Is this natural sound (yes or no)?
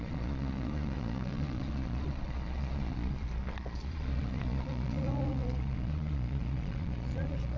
no